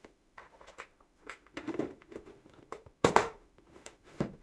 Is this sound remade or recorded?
remade